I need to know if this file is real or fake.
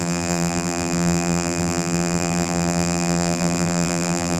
fake